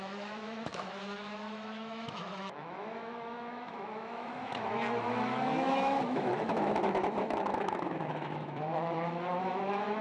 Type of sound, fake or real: fake